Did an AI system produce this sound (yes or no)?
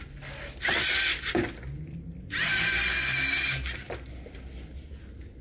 no